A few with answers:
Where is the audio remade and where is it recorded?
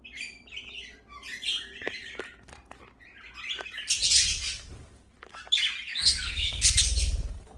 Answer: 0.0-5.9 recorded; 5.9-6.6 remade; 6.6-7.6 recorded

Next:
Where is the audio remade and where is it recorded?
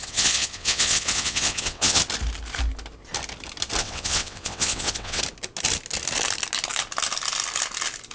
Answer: 0.0-2.0 remade; 2.0-3.8 recorded; 3.8-5.2 remade; 5.2-8.1 recorded